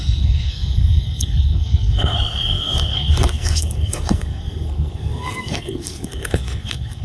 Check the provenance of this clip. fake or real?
fake